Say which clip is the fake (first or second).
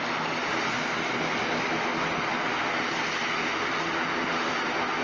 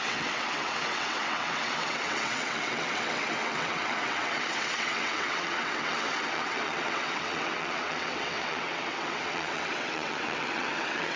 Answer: second